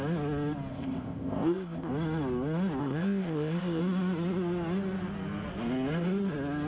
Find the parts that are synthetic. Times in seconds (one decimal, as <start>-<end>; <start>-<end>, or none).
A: 0.7-1.9; 2.8-3.8